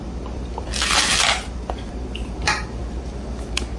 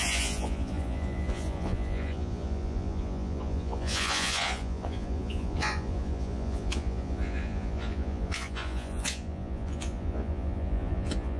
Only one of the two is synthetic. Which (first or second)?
second